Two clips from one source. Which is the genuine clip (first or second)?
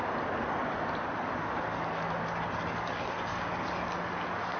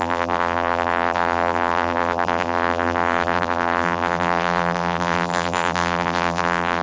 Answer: first